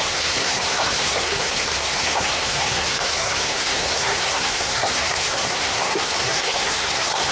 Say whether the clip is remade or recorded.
remade